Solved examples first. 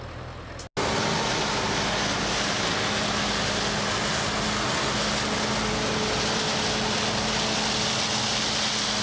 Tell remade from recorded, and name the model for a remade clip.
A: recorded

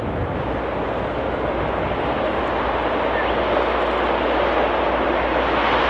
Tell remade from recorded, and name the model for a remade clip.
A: recorded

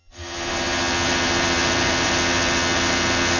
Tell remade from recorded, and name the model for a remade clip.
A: remade, vocoder, HiFi-GAN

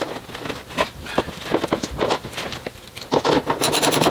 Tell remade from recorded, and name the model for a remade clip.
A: recorded